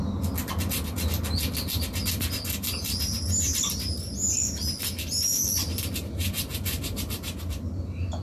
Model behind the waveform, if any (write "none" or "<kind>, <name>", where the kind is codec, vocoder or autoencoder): none